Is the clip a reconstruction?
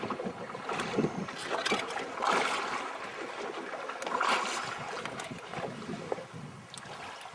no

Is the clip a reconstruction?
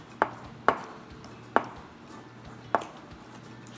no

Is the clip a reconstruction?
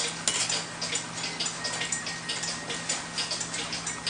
no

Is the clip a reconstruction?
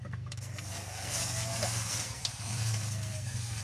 yes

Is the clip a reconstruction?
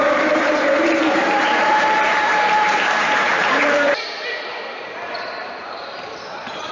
yes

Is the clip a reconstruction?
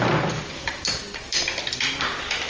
no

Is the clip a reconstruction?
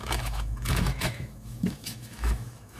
yes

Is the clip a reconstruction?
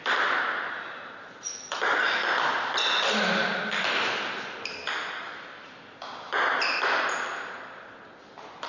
no